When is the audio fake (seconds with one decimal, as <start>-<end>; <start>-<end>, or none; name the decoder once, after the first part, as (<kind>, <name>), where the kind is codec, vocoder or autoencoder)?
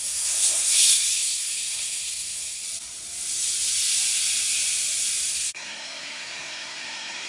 0.0-2.6 (codec, SNAC); 5.3-7.3